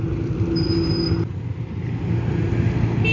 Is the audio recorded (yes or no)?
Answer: yes